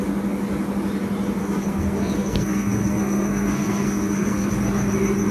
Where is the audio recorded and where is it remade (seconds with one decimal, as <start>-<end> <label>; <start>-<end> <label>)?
0.0-1.4 recorded; 1.4-4.5 remade; 4.5-5.3 recorded